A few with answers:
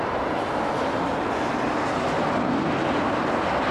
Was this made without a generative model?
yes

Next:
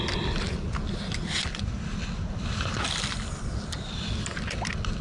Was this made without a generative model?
yes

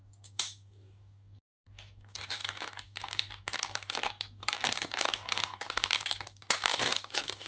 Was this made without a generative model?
no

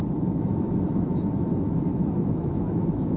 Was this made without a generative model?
no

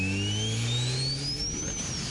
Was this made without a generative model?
yes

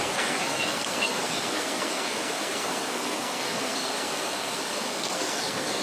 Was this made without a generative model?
no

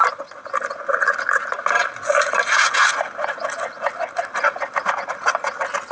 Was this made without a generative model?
yes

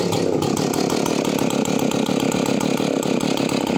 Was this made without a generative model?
yes